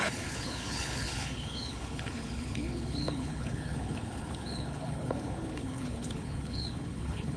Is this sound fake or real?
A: fake